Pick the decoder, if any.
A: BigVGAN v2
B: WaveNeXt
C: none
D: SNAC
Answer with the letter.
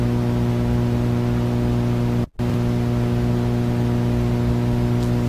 C